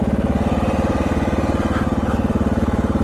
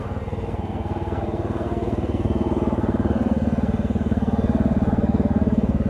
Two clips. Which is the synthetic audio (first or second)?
second